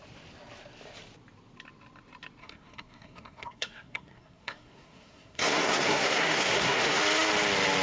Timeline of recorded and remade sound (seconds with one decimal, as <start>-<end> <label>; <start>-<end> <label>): 0.0-2.4 recorded; 2.4-7.0 remade; 7.0-7.8 recorded